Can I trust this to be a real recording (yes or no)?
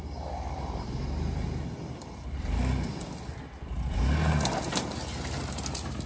yes